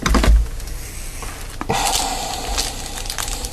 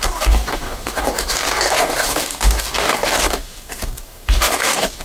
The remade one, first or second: second